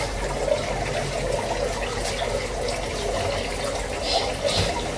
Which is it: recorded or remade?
recorded